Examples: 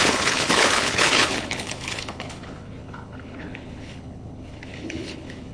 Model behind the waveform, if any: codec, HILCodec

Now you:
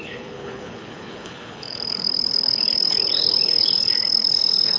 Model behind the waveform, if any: codec, HILCodec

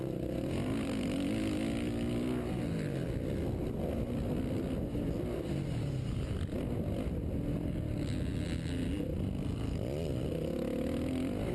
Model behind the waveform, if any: none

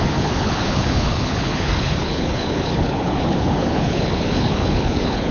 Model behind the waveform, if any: codec, HILCodec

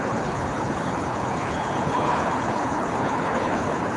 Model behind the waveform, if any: codec, HILCodec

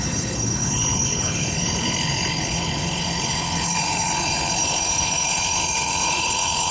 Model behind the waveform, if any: codec, HILCodec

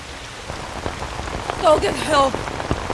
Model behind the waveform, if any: none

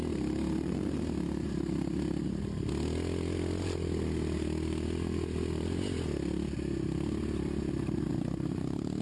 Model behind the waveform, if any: none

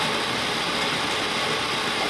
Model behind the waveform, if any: none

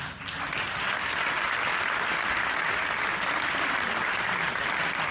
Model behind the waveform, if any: none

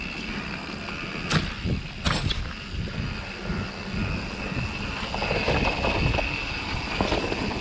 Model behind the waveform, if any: none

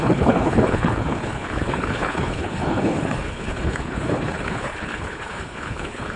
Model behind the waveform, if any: codec, HILCodec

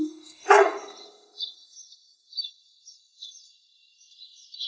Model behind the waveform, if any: none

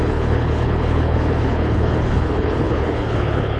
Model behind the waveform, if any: codec, HILCodec